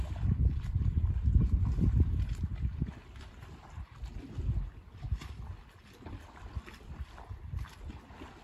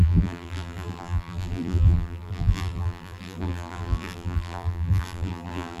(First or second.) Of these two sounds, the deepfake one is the second